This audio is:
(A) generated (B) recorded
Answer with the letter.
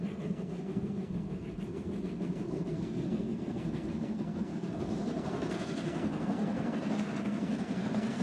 A